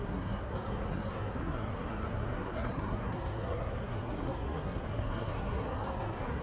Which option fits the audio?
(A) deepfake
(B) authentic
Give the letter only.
A